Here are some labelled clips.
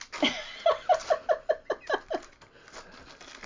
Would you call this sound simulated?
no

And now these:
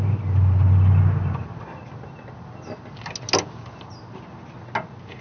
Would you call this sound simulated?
no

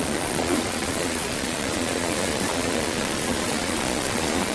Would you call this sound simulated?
yes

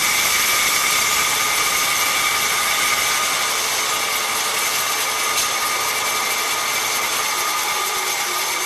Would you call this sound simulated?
no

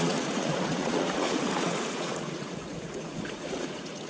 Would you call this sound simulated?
yes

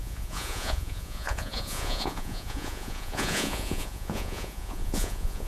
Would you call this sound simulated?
yes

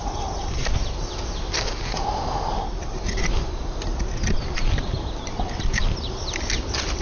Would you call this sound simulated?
no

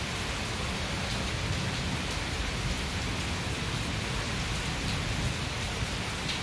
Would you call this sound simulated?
no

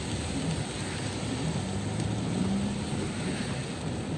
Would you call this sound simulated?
no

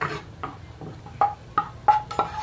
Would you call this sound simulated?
no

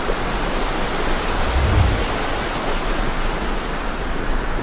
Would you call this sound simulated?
no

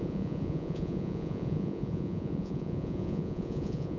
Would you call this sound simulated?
yes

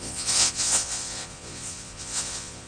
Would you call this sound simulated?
yes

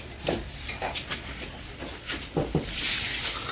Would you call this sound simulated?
no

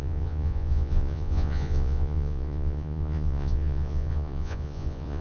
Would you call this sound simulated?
yes